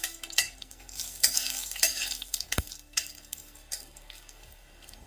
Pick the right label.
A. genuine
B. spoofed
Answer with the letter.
B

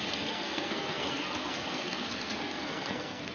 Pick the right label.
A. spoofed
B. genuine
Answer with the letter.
A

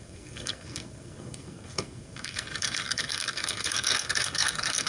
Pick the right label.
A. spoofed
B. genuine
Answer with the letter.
A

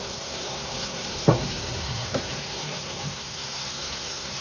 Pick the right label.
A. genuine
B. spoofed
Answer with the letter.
B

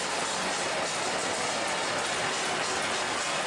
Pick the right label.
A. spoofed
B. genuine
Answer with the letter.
B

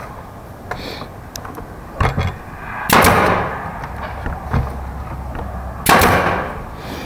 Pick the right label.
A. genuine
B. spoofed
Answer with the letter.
A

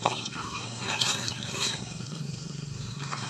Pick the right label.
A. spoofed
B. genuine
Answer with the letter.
A